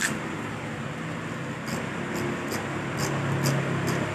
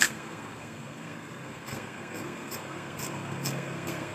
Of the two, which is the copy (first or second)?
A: second